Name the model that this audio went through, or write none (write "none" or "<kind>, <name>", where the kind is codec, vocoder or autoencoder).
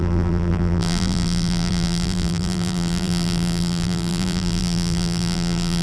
vocoder, BigVGAN v2